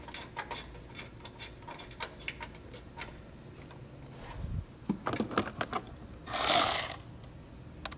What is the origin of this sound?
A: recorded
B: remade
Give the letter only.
A